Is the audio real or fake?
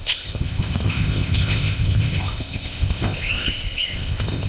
fake